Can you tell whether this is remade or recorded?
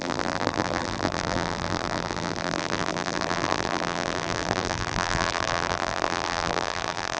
remade